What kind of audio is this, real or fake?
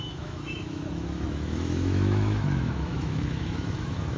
fake